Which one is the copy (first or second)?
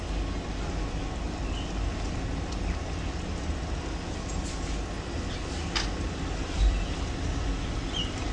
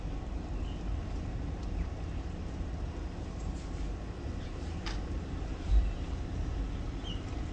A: second